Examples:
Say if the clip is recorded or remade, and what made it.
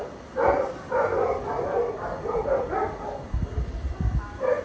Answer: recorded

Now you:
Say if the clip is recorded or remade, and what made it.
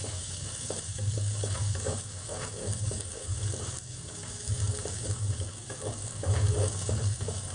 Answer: remade, codec, DAC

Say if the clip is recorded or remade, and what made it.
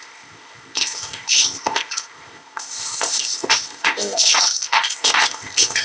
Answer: remade, codec, ZipCodec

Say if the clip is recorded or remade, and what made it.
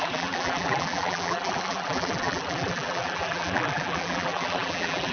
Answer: remade, vocoder, BigVGAN v2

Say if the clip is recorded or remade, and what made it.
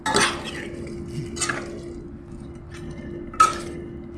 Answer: recorded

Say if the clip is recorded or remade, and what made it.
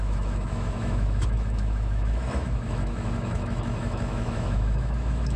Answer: remade, autoencoder, DAC-VAE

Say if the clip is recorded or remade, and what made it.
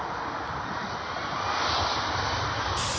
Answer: recorded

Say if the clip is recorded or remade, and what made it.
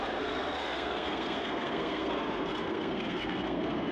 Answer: remade, codec, SNAC